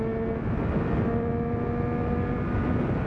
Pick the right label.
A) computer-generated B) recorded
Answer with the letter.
B